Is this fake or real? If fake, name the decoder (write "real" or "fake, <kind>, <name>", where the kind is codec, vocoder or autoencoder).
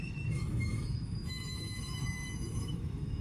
fake, autoencoder, DAC-VAE